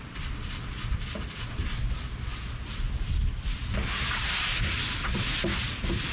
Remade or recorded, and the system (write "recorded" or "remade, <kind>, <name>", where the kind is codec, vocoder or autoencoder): recorded